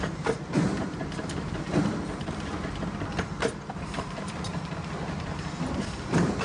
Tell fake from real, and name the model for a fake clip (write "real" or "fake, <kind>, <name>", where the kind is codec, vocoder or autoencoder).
fake, vocoder, BigVGAN v2